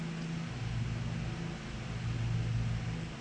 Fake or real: real